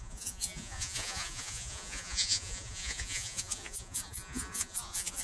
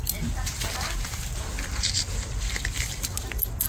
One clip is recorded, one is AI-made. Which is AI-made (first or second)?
first